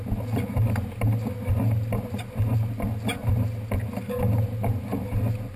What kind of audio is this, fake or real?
real